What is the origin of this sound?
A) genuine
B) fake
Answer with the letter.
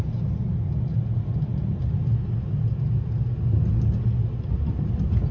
A